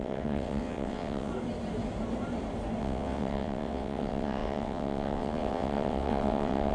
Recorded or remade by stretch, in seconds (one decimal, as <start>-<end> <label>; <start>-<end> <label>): 0.0-1.3 remade; 1.3-2.8 recorded; 2.8-6.7 remade